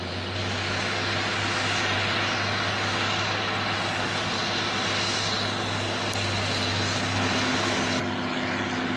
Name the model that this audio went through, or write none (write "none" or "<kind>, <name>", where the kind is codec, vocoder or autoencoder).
none